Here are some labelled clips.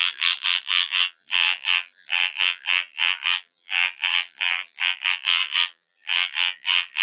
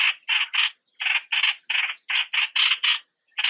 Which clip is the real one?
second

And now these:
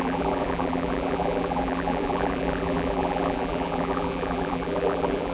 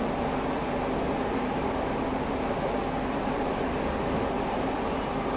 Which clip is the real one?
second